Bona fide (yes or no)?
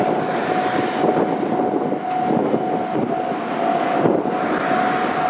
yes